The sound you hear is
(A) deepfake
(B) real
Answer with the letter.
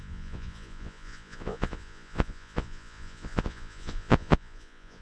A